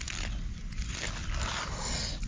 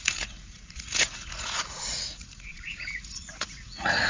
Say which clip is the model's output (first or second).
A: second